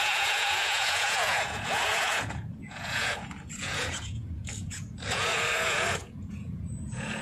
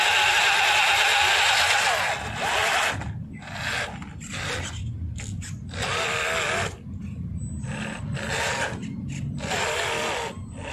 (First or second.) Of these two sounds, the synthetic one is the first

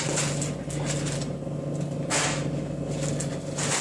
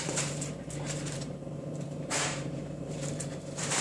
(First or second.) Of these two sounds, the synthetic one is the second